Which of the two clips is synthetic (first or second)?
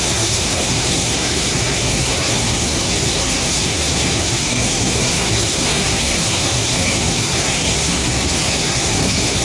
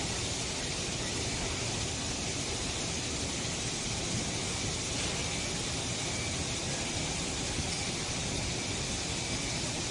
first